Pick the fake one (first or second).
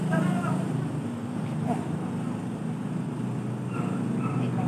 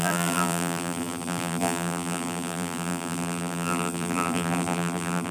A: second